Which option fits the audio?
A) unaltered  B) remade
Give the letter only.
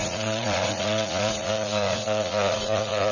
B